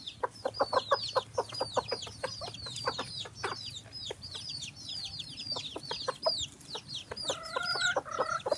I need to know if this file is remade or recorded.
recorded